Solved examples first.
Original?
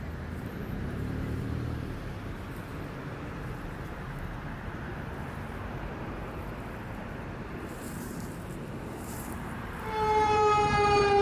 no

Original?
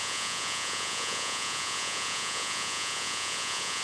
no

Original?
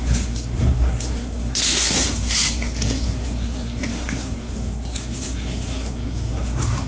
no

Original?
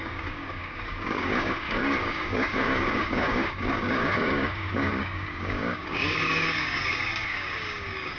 no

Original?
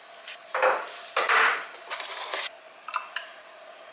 yes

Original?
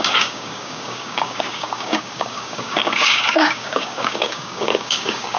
no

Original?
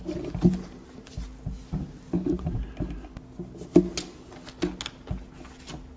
yes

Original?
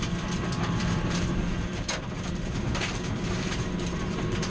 no